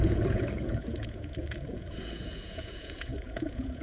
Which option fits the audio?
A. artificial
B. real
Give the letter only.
A